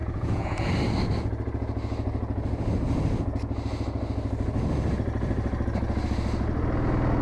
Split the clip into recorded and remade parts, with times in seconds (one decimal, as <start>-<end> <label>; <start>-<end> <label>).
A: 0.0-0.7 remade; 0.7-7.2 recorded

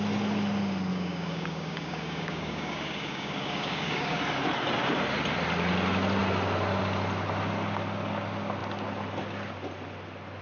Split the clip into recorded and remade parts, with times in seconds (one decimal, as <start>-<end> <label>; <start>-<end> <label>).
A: 0.0-0.9 recorded; 0.9-4.2 remade; 4.2-10.4 recorded

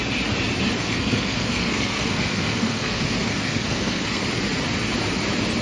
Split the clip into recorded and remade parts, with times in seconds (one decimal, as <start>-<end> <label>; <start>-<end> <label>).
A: 0.0-0.8 recorded; 0.8-4.2 remade; 4.2-5.6 recorded

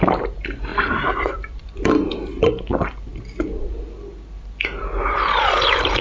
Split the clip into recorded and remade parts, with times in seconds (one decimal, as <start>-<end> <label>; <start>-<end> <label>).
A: 0.0-0.7 recorded; 0.7-2.5 remade; 2.5-6.0 recorded